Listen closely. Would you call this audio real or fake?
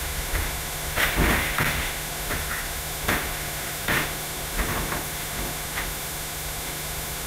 fake